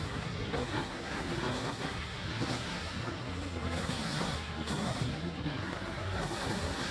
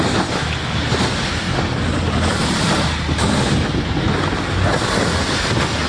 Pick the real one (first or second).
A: second